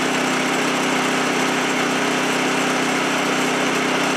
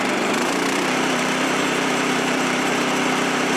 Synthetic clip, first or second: second